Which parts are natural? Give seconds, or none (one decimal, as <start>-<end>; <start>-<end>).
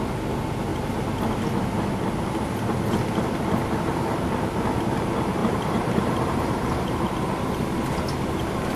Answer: 0.0-5.4; 7.1-8.8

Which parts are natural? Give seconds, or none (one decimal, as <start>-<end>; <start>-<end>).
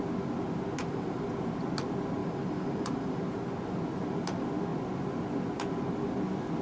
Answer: 0.0-0.8; 1.3-2.2; 3.2-6.6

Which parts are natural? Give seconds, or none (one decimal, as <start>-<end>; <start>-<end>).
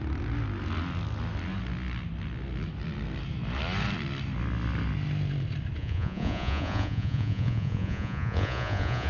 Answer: 0.0-5.8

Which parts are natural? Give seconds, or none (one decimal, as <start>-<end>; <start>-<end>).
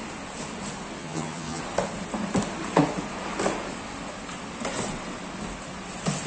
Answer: 0.0-1.0; 1.6-6.3